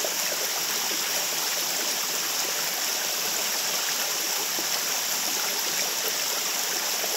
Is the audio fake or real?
real